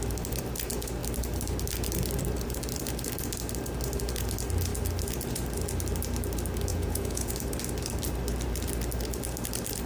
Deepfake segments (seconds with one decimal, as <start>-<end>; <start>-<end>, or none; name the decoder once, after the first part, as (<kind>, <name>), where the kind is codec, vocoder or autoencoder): 6.7-7.3 (vocoder, Vocos)

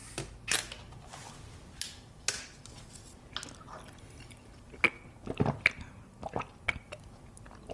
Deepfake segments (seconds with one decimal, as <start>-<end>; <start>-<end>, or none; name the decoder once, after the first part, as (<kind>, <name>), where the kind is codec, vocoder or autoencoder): none